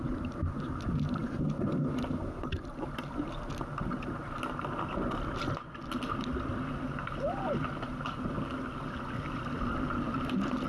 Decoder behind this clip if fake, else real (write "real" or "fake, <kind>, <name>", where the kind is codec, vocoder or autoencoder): real